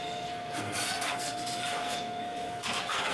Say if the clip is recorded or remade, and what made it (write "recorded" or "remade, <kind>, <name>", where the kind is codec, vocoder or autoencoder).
remade, codec, SNAC